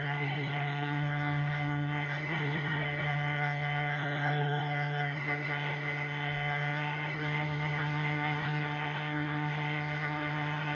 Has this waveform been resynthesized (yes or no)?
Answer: yes